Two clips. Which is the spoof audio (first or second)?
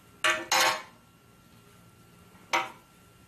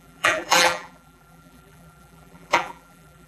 second